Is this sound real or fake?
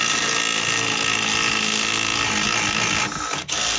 real